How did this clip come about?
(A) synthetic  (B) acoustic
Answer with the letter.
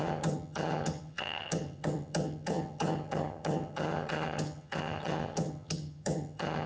A